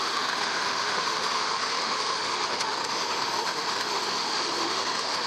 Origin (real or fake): fake